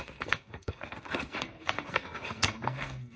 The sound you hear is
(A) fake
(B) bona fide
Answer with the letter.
A